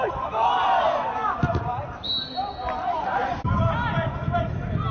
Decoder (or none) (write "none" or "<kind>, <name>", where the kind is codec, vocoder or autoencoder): none